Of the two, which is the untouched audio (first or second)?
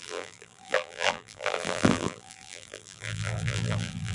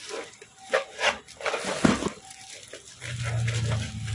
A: second